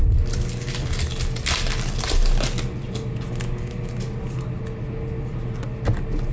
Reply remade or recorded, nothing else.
recorded